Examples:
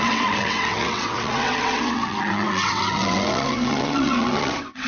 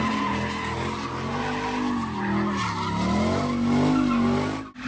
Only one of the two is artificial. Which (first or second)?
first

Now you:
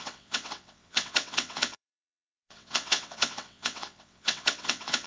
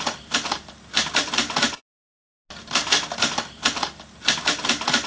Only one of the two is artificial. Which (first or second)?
first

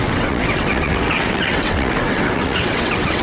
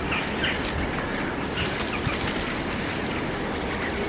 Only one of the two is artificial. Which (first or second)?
first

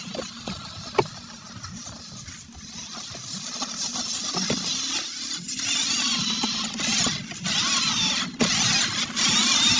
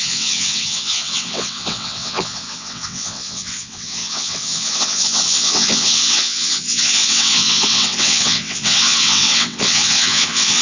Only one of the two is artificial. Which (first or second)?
second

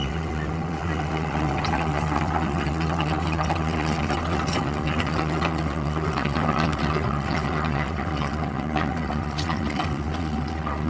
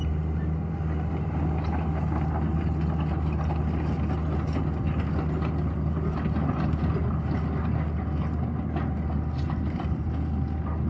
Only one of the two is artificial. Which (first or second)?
first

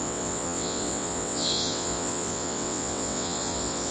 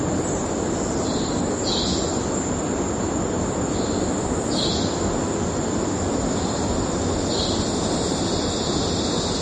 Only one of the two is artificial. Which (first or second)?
first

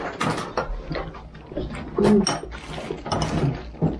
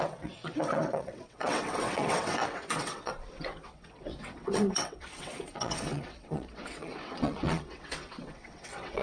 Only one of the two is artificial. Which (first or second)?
second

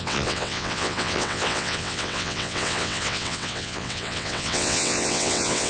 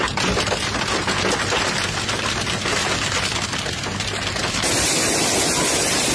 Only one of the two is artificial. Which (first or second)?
first